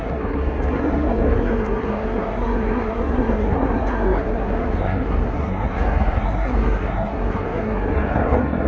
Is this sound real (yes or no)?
no